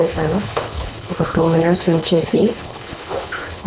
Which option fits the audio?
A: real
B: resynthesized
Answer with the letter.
B